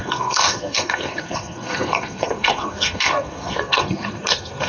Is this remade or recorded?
remade